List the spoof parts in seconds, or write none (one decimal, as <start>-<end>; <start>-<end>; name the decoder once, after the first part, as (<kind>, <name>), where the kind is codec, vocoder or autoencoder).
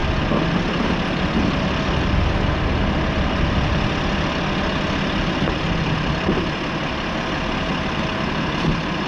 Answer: none